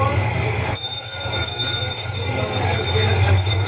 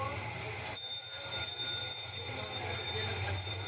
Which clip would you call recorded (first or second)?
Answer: second